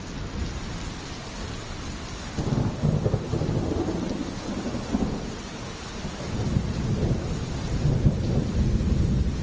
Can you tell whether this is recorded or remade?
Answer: recorded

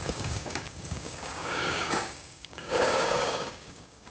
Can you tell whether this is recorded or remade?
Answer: remade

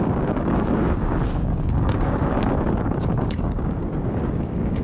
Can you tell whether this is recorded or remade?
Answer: remade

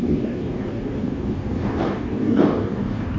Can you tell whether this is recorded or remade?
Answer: remade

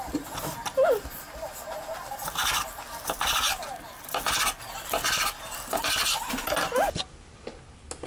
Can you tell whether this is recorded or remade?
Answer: recorded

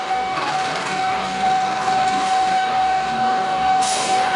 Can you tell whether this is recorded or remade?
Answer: remade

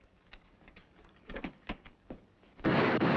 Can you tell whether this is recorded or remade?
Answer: remade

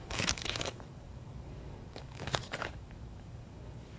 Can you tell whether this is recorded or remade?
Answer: remade